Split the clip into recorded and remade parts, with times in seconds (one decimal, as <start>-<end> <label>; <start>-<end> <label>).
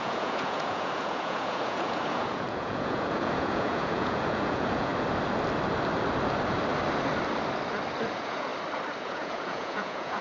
0.0-4.9 remade; 4.9-8.1 recorded; 8.1-8.5 remade; 8.5-9.0 recorded; 9.0-10.2 remade